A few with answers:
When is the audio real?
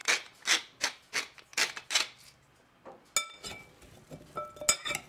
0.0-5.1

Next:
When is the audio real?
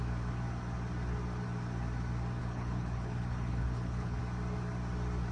0.0-2.4; 4.2-5.3